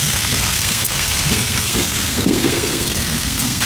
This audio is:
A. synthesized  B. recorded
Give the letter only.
A